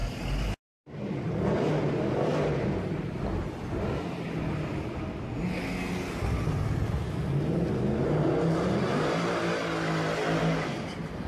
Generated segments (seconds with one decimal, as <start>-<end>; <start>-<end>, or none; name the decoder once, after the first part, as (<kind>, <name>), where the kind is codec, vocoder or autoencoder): none